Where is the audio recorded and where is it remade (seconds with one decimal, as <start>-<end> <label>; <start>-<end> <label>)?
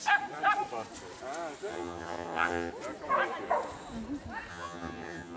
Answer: 0.0-1.7 recorded; 1.7-2.7 remade; 2.7-4.5 recorded; 4.5-5.4 remade